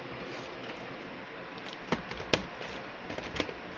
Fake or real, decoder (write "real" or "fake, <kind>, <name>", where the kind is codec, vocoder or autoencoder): real